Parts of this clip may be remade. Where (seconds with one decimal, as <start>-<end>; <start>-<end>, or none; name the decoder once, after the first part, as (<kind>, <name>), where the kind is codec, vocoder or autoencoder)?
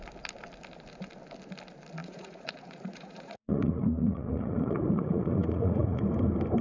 2.0-6.0 (vocoder, Vocos)